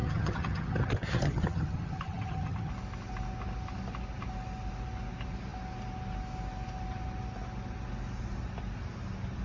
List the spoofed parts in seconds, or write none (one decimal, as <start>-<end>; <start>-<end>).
0.0-2.7